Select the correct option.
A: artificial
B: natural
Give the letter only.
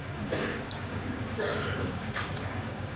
A